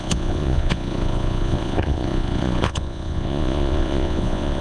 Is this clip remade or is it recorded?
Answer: remade